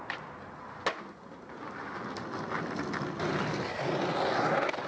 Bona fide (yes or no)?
yes